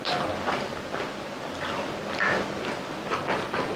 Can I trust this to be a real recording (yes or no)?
yes